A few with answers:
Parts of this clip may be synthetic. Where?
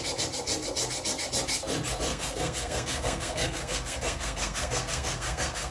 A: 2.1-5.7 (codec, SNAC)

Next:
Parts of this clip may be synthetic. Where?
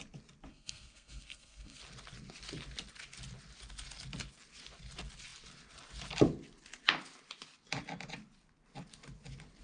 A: 0.5-1.8 (codec, SNAC)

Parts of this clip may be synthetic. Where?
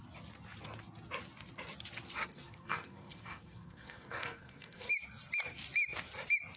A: 2.3-4.9 (codec, SNAC)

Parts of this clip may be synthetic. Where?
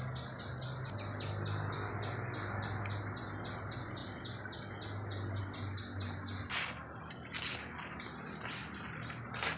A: none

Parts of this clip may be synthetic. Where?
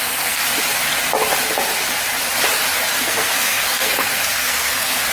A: 0.0-0.4 (codec, SNAC); 3.0-5.1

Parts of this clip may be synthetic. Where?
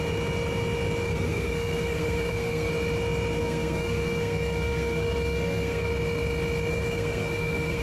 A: 1.0-2.7 (codec, SNAC); 3.4-5.9; 6.7-7.8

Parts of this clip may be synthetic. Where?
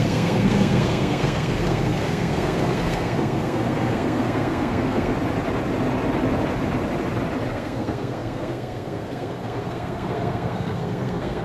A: 0.0-5.1 (codec, SNAC); 7.5-11.4